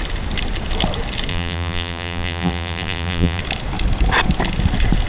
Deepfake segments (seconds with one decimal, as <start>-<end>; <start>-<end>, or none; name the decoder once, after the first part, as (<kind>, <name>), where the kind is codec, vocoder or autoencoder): 1.3-3.4 (vocoder, BigVGAN v2)